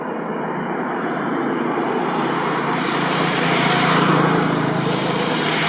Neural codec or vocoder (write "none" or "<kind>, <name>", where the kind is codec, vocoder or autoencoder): vocoder, BigVGAN v2